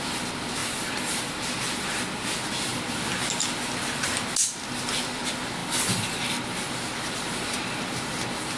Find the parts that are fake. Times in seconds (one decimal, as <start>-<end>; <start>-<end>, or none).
0.6-1.4; 5.6-6.2